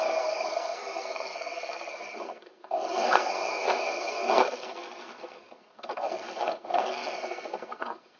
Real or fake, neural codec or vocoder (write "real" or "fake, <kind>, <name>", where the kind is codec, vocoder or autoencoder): fake, codec, SNAC